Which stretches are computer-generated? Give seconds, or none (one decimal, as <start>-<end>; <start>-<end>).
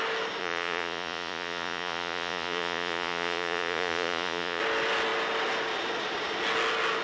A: 0.4-4.6